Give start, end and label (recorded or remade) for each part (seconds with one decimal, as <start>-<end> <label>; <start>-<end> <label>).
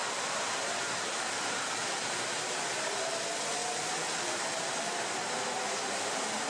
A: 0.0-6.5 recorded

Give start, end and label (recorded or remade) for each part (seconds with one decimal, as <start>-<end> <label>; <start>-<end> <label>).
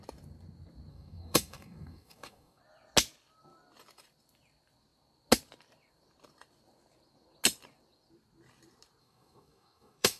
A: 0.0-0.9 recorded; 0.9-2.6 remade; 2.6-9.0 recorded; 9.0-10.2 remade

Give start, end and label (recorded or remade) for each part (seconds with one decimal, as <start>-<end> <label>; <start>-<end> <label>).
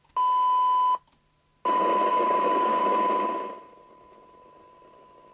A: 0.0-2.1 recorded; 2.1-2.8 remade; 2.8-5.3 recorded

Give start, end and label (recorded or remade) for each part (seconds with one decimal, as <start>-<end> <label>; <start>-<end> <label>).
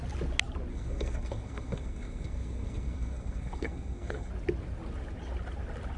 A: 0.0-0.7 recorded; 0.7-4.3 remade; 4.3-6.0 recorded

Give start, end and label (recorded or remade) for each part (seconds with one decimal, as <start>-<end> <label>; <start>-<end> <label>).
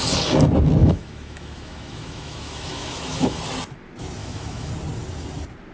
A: 0.0-0.8 recorded; 0.8-3.4 remade; 3.4-4.2 recorded; 4.2-4.7 remade; 4.7-5.7 recorded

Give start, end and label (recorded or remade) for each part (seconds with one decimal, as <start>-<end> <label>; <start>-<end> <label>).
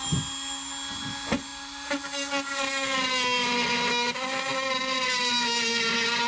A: 0.0-6.3 recorded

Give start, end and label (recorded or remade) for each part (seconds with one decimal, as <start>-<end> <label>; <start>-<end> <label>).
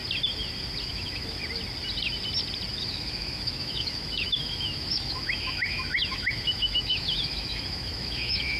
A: 0.0-0.9 recorded; 0.9-1.4 remade; 1.4-2.7 recorded; 2.7-8.6 remade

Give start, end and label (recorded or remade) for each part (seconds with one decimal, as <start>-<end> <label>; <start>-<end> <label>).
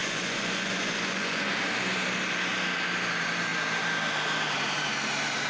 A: 0.0-1.5 remade; 1.5-5.5 recorded